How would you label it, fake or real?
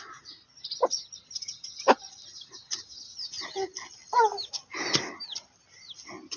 real